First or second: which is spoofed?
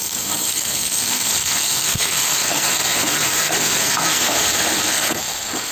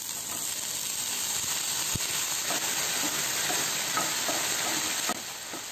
first